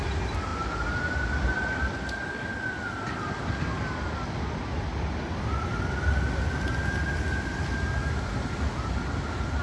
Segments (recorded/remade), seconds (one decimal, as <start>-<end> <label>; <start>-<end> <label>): 0.0-9.6 recorded